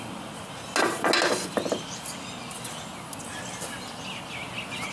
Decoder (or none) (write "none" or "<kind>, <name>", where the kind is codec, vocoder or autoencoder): none